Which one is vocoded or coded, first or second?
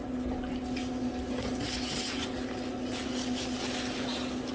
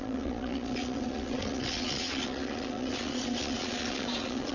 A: second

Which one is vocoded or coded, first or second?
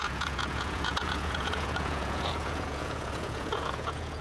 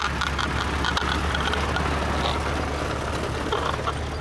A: first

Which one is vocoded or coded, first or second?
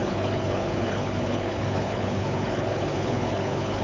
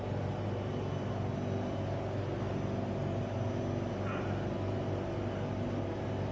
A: first